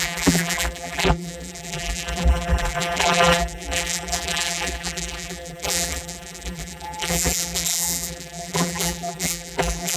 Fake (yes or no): yes